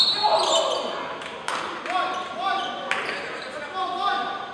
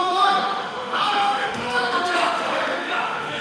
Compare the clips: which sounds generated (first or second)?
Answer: second